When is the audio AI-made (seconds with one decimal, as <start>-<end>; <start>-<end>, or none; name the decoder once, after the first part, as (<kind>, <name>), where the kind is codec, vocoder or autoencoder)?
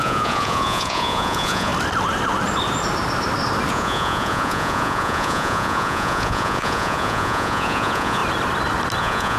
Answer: 0.0-1.7 (vocoder, Vocos); 3.7-8.2; 9.0-9.4